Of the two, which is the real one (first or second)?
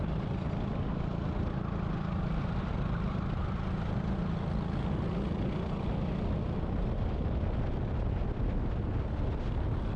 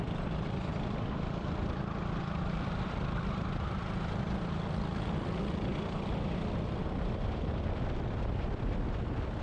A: first